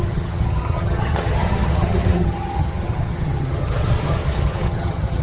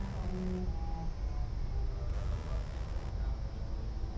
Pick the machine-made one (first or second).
first